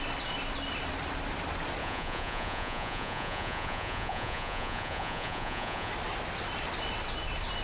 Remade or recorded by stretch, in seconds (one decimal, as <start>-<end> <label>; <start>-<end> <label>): 0.0-1.8 recorded; 1.8-5.9 remade; 5.9-7.6 recorded